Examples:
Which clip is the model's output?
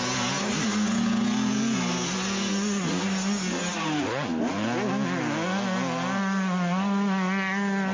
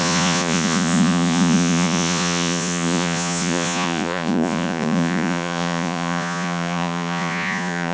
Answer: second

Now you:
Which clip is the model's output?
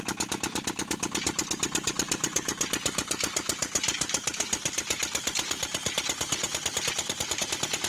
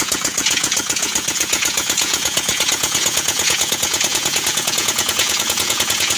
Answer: second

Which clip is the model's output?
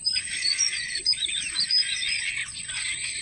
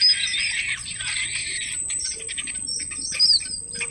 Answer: first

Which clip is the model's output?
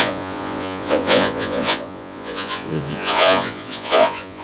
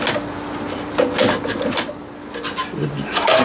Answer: first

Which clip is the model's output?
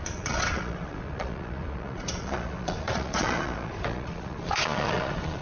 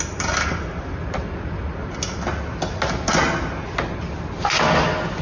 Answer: first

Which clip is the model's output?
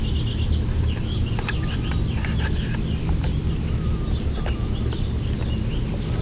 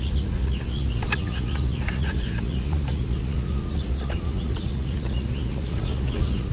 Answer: second